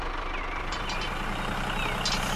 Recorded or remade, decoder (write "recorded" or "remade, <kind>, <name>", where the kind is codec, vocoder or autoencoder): recorded